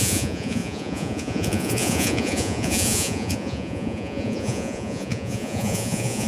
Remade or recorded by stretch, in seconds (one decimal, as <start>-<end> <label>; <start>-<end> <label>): 0.0-6.3 remade